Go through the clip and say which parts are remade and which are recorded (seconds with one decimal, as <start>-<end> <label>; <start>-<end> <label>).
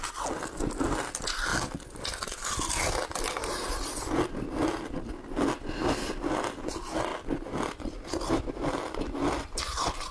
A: 0.0-1.5 recorded; 1.5-3.7 remade; 3.7-10.1 recorded